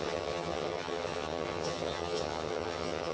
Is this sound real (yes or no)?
no